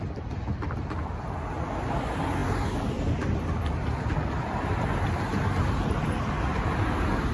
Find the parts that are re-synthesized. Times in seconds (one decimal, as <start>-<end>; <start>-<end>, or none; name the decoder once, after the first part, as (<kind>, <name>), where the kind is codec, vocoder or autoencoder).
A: none